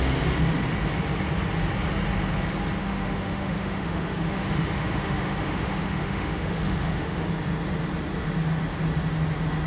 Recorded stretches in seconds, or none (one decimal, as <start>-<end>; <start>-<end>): 0.0-2.8; 7.3-9.7